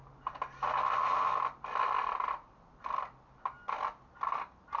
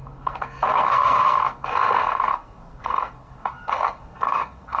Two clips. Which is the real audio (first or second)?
first